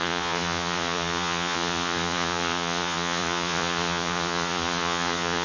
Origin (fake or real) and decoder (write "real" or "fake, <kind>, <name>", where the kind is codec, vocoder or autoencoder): fake, vocoder, Vocos